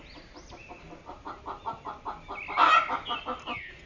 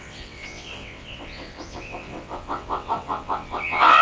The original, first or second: first